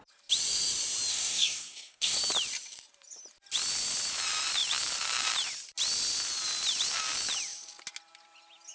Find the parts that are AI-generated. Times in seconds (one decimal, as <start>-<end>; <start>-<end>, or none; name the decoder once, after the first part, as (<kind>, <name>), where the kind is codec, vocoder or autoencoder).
1.1-2.2 (codec, SNAC)